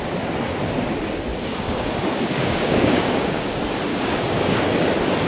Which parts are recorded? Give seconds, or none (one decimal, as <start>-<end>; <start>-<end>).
0.0-1.3; 3.5-3.9; 4.6-5.3